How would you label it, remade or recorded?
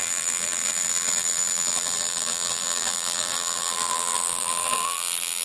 remade